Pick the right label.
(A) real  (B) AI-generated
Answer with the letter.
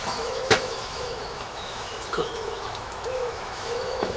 B